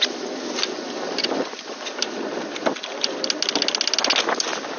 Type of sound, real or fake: real